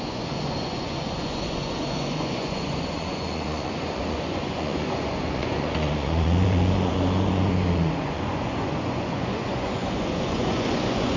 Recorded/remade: remade